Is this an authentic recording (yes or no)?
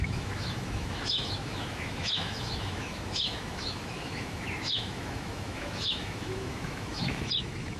no